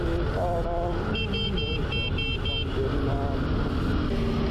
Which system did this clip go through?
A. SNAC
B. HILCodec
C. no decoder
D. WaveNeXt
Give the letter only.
C